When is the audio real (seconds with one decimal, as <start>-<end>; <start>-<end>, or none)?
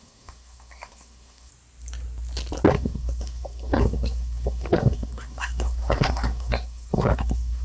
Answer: 1.5-2.7